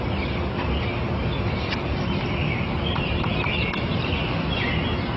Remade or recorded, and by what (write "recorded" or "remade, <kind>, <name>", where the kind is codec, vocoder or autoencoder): recorded